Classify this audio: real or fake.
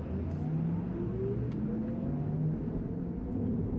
real